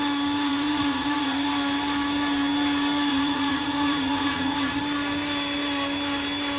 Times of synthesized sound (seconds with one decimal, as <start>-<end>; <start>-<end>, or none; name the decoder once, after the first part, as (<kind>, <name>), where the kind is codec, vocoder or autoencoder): 0.5-1.5 (vocoder, Vocos); 3.1-4.8